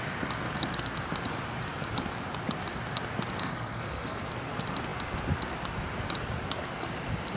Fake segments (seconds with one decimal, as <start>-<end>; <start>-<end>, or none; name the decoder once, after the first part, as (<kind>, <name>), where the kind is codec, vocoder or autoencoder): 3.4-4.2 (codec, SNAC)